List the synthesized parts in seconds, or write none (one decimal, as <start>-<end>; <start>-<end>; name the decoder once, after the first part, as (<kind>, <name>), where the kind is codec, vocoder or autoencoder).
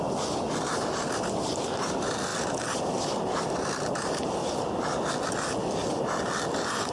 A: none